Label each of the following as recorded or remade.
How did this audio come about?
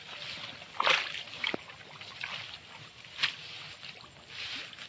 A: recorded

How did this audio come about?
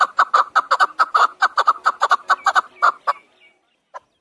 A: recorded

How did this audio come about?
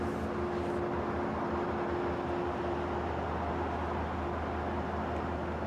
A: recorded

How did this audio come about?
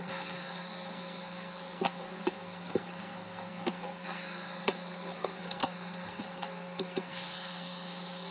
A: remade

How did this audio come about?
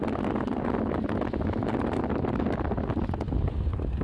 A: recorded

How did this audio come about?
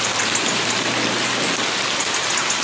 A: recorded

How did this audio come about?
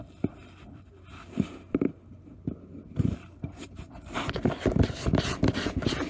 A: recorded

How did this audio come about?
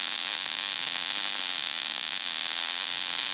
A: recorded